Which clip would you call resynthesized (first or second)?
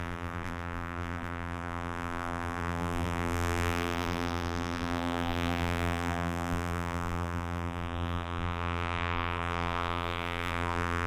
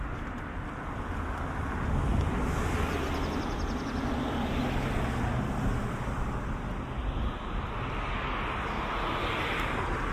first